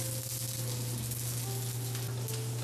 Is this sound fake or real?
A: real